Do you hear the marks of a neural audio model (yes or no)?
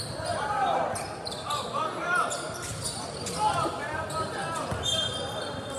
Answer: no